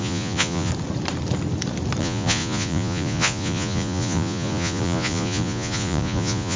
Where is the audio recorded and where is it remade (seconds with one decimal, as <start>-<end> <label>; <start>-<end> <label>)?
0.0-0.7 remade; 0.7-2.0 recorded; 2.0-6.6 remade